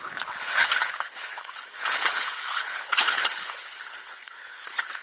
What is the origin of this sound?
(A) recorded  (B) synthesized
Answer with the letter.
B